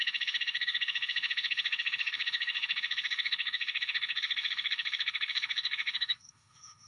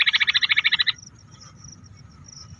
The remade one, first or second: first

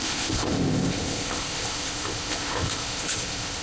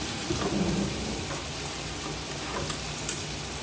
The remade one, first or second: first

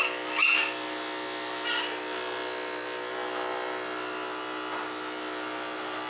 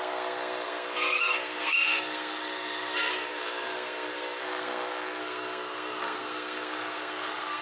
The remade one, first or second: second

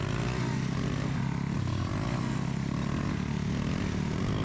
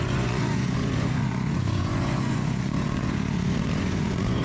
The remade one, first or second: second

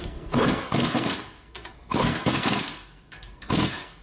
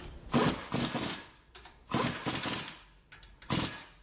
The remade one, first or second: first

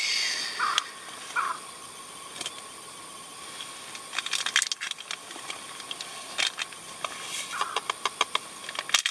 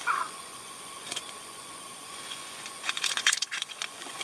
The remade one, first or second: second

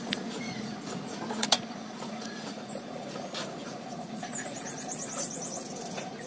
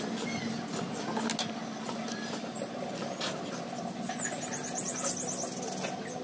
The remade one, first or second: first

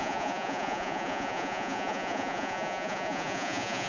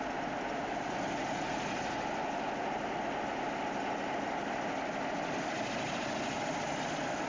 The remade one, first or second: first